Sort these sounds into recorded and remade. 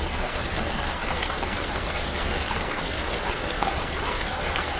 remade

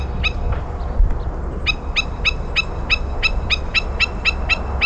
recorded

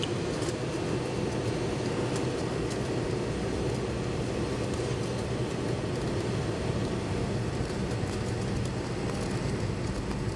recorded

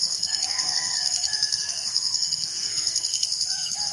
remade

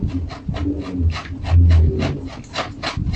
recorded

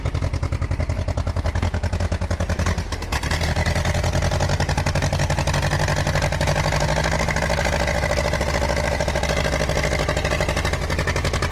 recorded